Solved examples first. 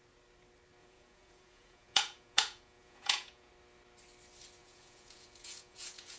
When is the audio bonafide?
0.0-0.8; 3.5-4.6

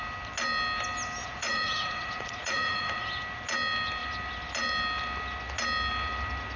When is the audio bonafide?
0.0-1.2; 3.1-6.6

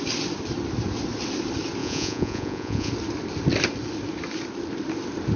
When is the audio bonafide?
0.0-1.8; 2.9-5.4

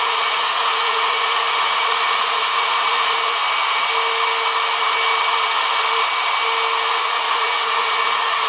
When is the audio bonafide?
3.4-6.9

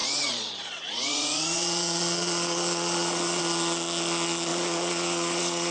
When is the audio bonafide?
3.4-4.5